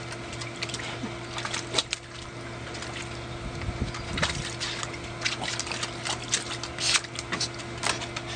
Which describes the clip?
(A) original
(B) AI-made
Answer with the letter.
A